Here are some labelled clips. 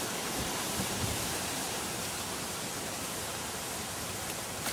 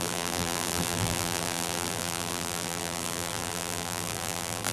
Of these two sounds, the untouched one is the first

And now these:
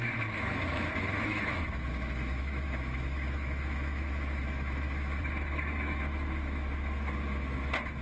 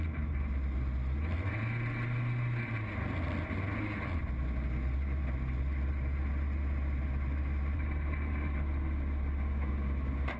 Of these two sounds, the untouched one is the second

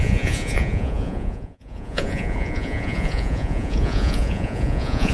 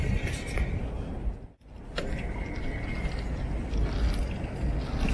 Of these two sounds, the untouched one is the second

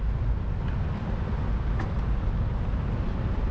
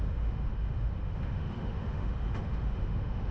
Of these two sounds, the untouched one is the first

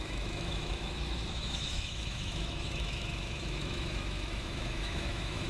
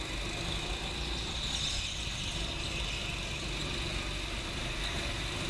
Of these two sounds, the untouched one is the second